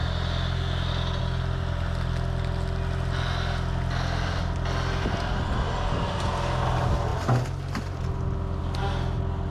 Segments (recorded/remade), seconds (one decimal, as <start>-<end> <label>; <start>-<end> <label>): 0.0-9.5 recorded